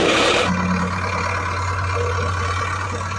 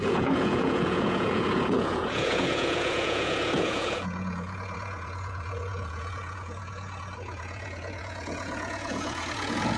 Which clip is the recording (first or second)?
first